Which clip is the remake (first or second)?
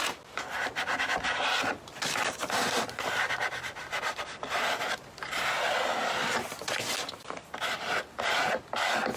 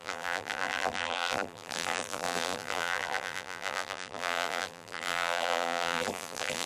second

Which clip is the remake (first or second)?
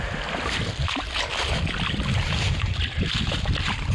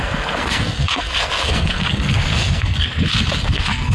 second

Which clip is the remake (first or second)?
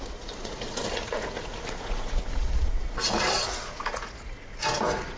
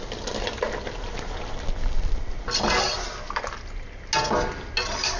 first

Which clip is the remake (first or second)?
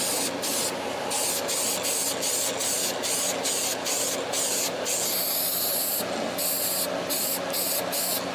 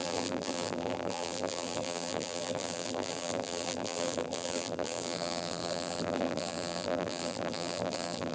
second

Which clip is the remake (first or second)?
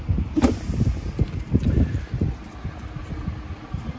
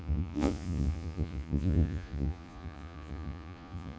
second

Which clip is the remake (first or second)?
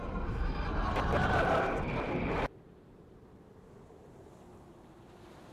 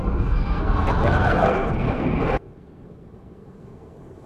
second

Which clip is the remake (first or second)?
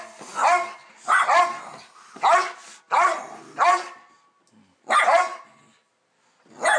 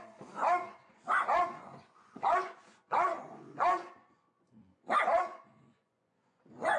second